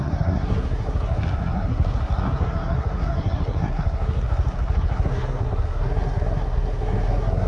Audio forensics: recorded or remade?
remade